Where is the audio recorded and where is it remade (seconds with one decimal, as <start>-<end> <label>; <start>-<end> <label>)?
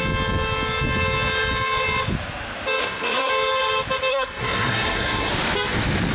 0.0-2.8 recorded; 2.8-3.3 remade; 3.3-4.1 recorded; 4.1-5.3 remade; 5.3-6.1 recorded